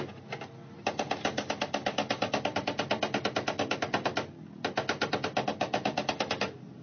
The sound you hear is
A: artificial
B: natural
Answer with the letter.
B